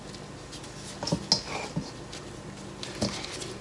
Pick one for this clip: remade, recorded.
recorded